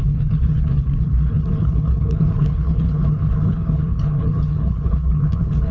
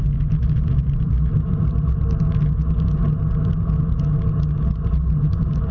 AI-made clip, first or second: first